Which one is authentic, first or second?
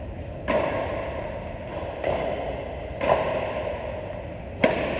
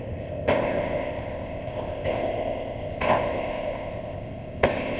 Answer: first